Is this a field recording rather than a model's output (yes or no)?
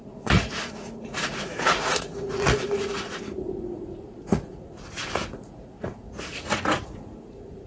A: no